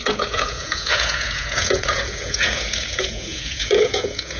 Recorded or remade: remade